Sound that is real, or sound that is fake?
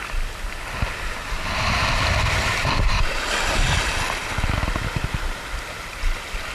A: real